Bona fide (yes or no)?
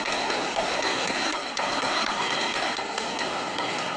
no